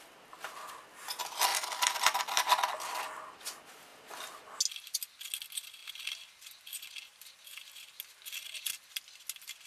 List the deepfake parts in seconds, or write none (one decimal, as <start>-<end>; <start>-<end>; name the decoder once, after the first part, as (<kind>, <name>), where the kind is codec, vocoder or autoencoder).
none